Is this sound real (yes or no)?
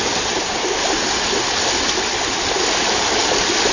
yes